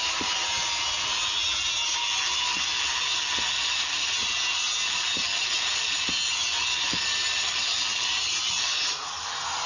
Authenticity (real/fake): real